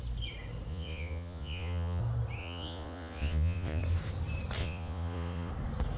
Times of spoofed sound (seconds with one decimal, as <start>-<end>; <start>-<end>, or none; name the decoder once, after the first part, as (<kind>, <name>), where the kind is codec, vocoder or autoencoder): 0.7-2.0 (vocoder, Vocos); 2.4-3.8; 4.6-5.5